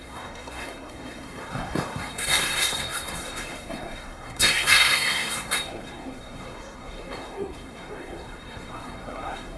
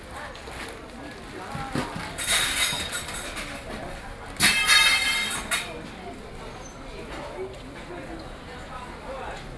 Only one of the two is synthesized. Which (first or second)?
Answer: first